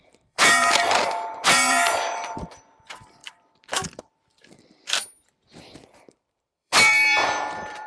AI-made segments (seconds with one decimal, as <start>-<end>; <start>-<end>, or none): 0.0-7.9